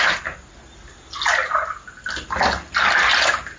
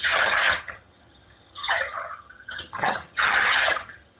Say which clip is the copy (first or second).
second